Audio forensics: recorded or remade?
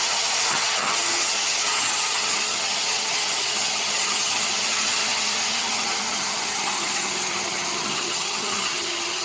remade